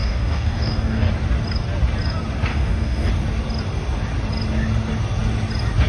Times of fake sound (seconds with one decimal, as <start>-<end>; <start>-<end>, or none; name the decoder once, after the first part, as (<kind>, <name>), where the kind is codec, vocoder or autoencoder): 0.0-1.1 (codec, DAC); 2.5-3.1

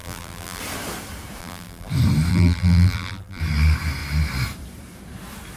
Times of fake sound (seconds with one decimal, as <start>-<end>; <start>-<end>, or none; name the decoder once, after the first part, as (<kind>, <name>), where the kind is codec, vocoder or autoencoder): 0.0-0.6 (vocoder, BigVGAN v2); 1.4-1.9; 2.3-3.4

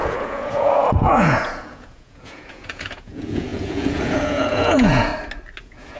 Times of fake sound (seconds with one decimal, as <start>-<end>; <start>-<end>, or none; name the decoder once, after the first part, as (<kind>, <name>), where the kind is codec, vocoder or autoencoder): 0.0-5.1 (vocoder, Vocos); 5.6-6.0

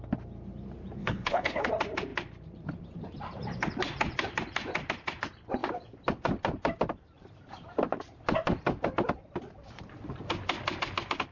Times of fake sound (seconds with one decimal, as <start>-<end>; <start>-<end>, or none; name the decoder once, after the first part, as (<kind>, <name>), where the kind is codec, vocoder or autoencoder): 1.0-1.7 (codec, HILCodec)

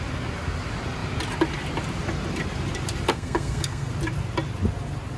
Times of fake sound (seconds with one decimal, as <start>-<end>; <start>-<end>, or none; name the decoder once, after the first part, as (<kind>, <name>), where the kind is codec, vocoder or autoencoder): 3.1-3.9 (codec, SNAC)

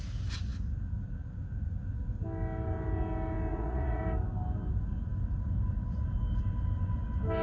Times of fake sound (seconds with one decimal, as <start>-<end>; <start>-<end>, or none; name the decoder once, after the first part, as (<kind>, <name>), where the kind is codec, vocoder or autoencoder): 3.5-4.0 (vocoder, Vocos)

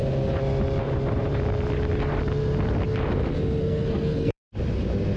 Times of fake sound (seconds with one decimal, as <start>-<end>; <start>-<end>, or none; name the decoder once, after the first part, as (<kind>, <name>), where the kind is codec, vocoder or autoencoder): 3.6-4.4 (codec, SNAC)